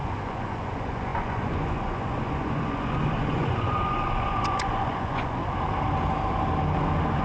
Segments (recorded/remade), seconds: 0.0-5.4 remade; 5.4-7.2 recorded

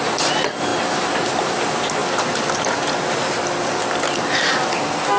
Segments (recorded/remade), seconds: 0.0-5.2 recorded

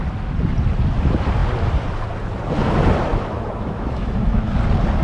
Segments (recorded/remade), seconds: 0.0-3.1 recorded; 3.1-4.5 remade; 4.5-5.0 recorded